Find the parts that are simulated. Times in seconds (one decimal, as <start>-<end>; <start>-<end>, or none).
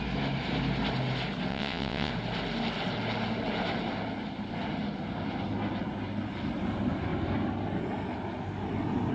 1.5-2.1